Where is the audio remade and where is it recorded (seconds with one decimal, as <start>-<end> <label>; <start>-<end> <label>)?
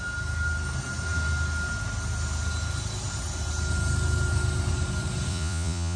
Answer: 0.0-5.3 recorded; 5.3-6.0 remade